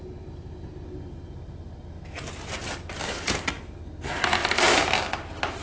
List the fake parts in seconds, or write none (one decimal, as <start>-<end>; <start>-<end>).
none